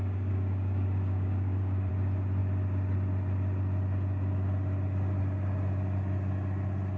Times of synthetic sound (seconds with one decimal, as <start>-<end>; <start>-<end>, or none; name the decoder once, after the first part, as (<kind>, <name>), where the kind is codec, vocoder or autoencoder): 0.0-1.9 (codec, DAC)

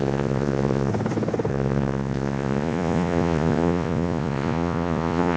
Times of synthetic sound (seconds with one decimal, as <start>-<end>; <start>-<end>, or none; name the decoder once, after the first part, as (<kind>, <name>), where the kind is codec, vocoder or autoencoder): 0.0-0.9 (vocoder, Vocos); 1.5-5.4

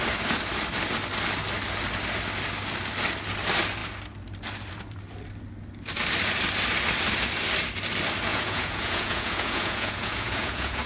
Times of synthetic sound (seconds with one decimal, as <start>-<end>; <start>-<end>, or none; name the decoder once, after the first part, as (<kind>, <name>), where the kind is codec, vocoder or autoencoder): 8.3-10.9 (vocoder, Vocos)